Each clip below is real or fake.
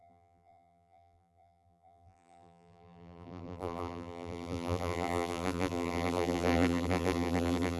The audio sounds fake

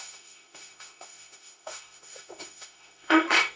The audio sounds fake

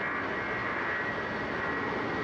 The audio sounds real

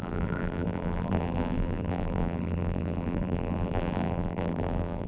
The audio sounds fake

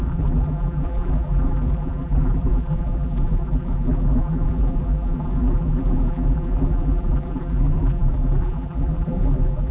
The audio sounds fake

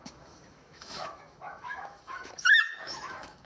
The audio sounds fake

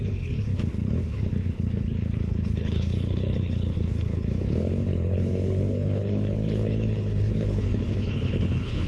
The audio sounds fake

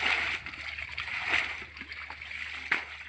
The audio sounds real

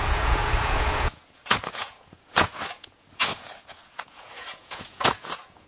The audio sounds fake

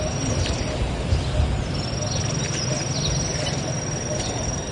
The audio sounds real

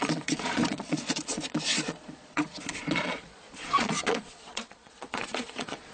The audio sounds fake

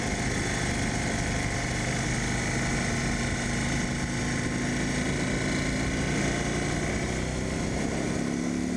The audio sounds real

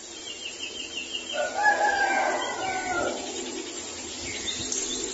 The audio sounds real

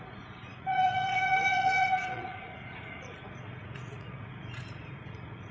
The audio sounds fake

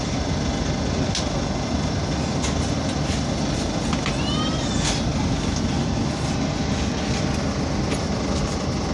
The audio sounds real